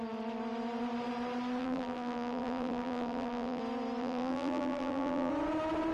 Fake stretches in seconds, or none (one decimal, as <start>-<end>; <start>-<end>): 1.6-3.6; 4.0-5.3